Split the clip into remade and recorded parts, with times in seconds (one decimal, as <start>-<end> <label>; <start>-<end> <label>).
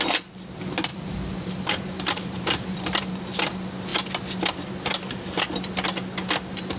0.0-0.9 recorded; 0.9-3.0 remade; 3.0-6.8 recorded